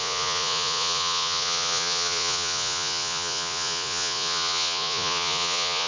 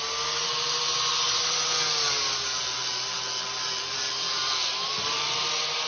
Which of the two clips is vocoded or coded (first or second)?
first